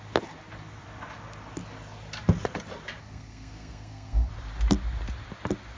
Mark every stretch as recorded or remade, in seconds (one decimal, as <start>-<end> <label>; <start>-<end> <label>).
0.0-3.0 recorded; 3.0-4.3 remade; 4.3-5.8 recorded